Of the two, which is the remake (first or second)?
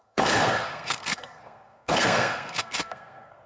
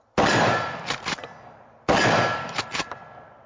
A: first